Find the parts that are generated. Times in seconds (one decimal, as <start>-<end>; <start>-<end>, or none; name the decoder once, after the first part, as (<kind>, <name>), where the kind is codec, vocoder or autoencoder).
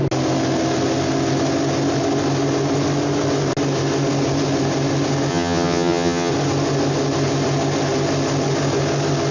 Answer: 5.3-6.3 (vocoder, HiFi-GAN)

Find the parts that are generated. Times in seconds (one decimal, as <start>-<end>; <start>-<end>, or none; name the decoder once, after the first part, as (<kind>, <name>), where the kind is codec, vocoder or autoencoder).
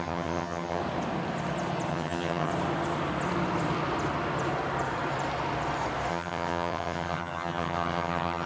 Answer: 0.0-0.8 (vocoder, HiFi-GAN); 1.9-2.5; 6.1-8.5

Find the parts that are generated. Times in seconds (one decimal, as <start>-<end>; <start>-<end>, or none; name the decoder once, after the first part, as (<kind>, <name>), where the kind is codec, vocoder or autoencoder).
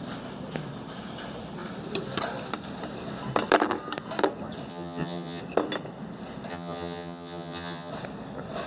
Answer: 4.7-5.4 (vocoder, HiFi-GAN); 6.5-7.9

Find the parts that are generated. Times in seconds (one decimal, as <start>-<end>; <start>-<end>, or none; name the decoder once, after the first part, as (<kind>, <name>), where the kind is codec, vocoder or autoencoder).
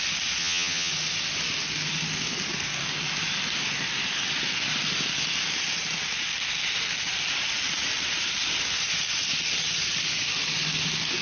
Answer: 0.4-0.9 (vocoder, HiFi-GAN)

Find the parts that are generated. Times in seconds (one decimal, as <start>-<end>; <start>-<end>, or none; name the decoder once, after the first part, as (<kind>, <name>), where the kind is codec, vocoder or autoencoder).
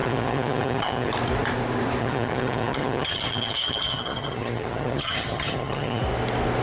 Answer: 0.0-1.1 (vocoder, HiFi-GAN); 2.0-6.0